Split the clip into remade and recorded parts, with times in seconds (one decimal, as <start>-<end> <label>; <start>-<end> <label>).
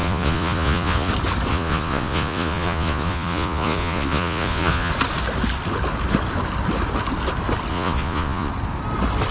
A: 0.0-1.1 remade; 1.1-1.5 recorded; 1.5-4.9 remade; 4.9-7.7 recorded; 7.7-8.5 remade; 8.5-9.3 recorded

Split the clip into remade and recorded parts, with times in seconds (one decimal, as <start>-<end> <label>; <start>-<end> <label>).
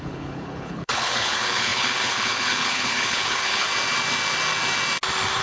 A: 0.0-3.7 remade; 3.7-5.4 recorded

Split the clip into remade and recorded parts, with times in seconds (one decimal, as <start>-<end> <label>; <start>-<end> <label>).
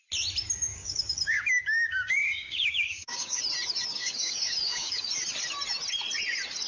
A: 0.0-0.7 recorded; 0.7-3.4 remade; 3.4-3.9 recorded; 3.9-5.1 remade; 5.1-6.7 recorded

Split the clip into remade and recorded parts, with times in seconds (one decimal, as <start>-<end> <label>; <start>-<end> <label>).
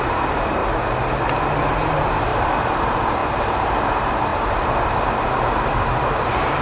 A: 0.0-0.6 remade; 0.6-1.2 recorded; 1.2-6.6 remade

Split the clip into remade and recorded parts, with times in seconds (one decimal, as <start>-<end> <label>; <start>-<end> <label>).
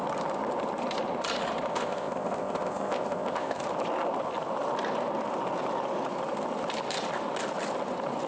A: 0.0-1.7 recorded; 1.7-3.6 remade; 3.6-8.3 recorded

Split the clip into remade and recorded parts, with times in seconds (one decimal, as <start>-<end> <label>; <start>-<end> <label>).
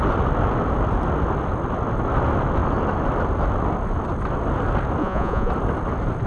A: 0.0-5.0 recorded; 5.0-5.5 remade; 5.5-6.3 recorded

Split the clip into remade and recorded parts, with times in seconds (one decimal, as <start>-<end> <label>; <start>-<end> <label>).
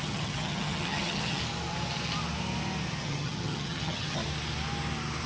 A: 0.0-1.4 remade; 1.4-3.0 recorded; 3.0-4.2 remade; 4.2-5.3 recorded